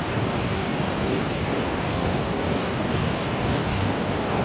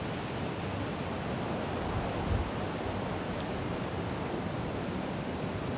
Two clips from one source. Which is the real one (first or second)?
second